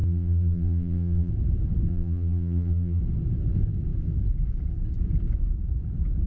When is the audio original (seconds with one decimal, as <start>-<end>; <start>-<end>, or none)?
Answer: 1.3-1.9; 3.0-6.3